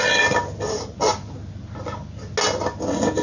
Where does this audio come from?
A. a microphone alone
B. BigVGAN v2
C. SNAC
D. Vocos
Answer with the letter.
A